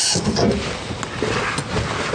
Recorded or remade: recorded